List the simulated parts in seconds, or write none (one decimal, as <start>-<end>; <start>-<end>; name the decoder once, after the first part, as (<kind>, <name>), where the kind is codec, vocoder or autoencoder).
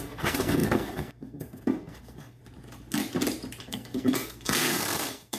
0.0-2.4 (codec, SNAC); 3.6-5.4